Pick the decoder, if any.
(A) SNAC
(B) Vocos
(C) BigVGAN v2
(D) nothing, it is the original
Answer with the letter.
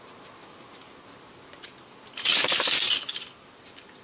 D